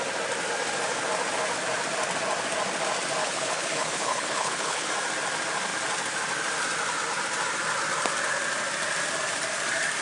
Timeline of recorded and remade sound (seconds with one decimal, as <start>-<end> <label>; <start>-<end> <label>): 0.0-3.2 recorded; 3.2-4.9 remade; 4.9-10.0 recorded